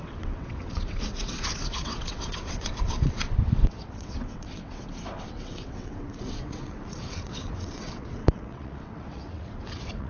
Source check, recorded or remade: remade